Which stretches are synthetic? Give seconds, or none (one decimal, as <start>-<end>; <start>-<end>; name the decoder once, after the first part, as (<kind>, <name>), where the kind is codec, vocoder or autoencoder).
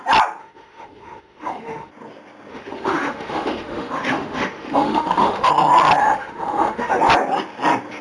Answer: 0.4-1.9 (autoencoder, DAC-VAE); 2.5-5.5; 6.0-7.0